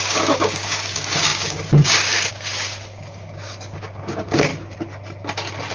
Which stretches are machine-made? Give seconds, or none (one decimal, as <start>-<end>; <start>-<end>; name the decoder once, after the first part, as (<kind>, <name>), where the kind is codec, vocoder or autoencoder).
0.0-4.5 (codec, DAC)